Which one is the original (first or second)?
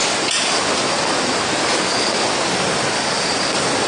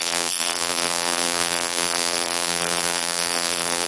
first